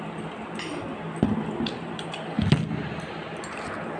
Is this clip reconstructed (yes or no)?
no